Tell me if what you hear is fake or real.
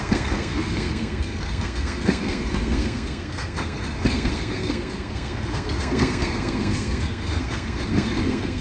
fake